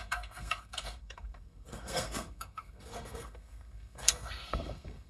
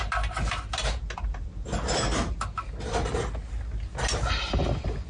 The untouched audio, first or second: second